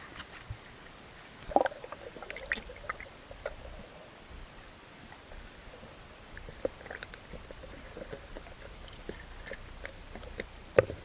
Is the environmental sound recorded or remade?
recorded